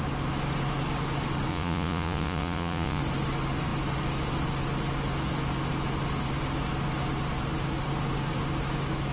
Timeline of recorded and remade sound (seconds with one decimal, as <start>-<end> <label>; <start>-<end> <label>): 0.0-1.5 recorded; 1.5-3.0 remade; 3.0-9.1 recorded